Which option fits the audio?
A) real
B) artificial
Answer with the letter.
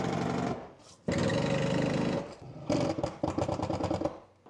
A